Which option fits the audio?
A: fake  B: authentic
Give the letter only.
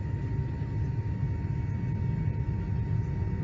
B